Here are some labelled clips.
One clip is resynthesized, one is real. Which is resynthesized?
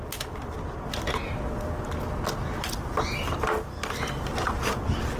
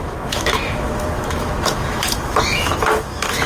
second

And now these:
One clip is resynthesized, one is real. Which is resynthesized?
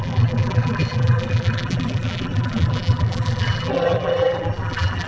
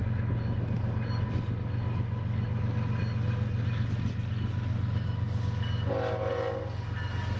first